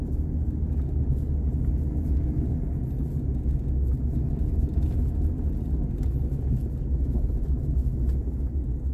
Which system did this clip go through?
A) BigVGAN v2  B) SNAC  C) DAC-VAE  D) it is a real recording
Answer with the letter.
D